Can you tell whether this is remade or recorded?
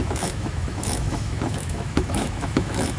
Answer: remade